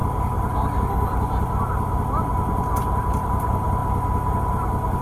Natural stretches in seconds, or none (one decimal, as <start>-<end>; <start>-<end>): 0.0-3.0; 3.8-5.0